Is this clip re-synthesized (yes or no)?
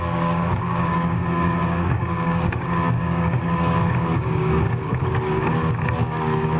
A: yes